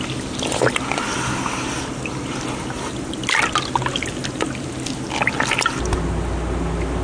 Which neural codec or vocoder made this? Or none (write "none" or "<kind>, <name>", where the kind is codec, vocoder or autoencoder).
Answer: none